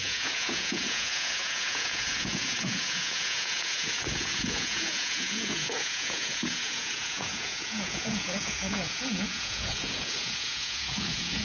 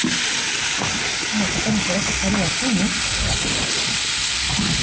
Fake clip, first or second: first